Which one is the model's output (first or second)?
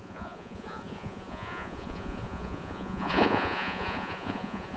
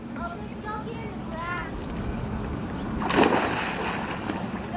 first